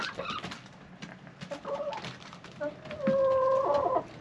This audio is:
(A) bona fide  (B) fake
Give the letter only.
A